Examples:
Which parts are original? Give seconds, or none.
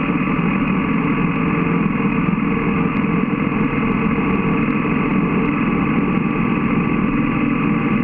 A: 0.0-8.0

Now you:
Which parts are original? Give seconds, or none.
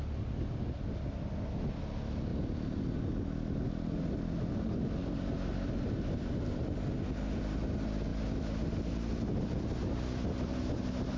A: 0.0-11.2